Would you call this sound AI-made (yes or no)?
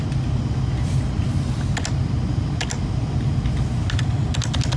no